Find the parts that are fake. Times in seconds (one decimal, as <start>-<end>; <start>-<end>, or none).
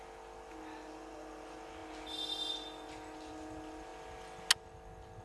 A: none